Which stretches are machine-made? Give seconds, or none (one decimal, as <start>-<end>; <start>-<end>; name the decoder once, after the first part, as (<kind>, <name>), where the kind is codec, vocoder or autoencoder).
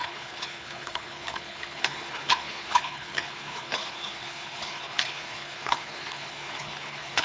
0.0-7.2 (codec, HILCodec)